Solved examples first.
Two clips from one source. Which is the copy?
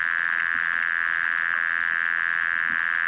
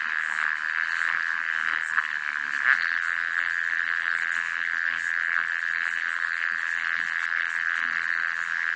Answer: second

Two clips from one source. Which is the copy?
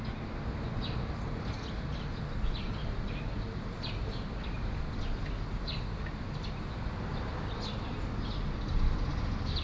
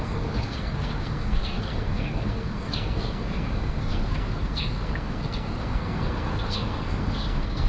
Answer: second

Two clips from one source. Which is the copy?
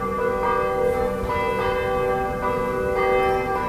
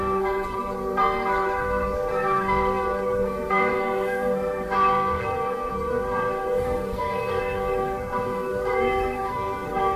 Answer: second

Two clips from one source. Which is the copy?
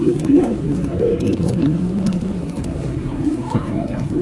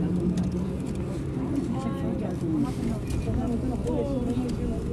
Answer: first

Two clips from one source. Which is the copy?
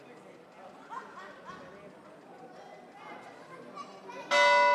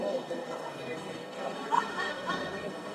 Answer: second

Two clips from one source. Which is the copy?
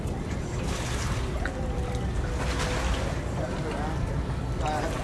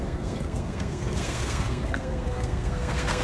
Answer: second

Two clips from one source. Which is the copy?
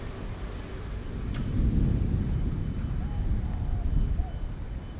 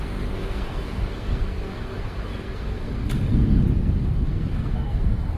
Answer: second